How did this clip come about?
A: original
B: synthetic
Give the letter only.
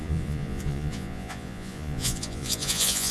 B